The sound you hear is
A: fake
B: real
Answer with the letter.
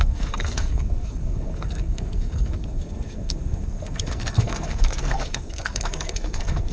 A